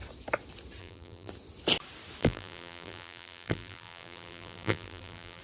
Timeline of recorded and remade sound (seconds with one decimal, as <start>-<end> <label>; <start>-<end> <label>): 0.0-0.8 recorded; 0.8-1.3 remade; 1.3-2.2 recorded; 2.2-5.4 remade